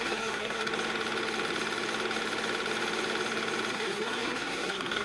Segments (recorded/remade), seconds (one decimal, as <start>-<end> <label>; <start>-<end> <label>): 0.0-0.7 remade; 0.7-3.7 recorded; 3.7-5.0 remade